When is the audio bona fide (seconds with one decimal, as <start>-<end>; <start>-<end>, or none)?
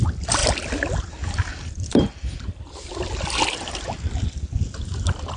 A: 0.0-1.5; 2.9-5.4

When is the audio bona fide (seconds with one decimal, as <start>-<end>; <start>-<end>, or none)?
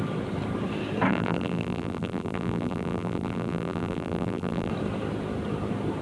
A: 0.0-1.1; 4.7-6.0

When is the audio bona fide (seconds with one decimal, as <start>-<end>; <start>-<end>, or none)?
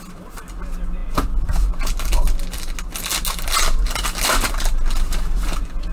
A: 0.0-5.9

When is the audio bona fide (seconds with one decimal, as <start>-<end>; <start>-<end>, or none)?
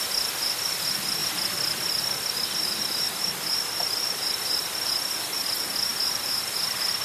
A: 0.0-7.0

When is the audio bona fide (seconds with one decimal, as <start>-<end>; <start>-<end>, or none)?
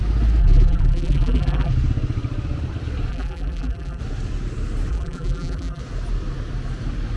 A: 0.0-0.4; 1.7-3.1; 4.0-4.9; 5.8-7.2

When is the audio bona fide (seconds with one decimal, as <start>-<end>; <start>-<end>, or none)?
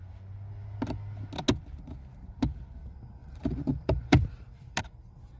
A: 0.0-2.1; 2.6-3.2; 4.8-5.4